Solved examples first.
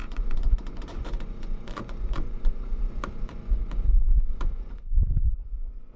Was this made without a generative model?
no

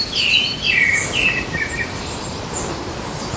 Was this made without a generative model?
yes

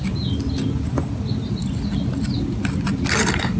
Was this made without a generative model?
yes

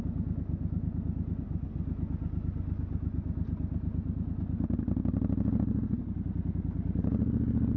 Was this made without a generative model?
yes